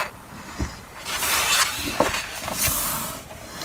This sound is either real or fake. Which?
real